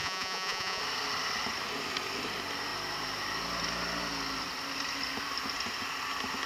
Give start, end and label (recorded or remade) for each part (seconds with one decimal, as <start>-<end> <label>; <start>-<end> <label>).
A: 0.0-0.8 remade; 0.8-6.5 recorded